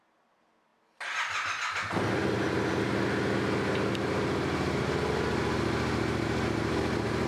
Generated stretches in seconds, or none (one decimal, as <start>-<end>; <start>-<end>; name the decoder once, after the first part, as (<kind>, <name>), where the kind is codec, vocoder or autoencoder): none